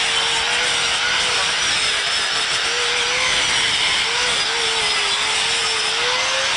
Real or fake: real